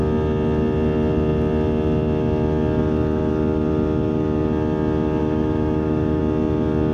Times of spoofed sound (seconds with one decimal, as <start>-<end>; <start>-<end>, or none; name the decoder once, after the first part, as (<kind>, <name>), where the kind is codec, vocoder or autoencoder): 5.2-6.2 (autoencoder, DAC-VAE)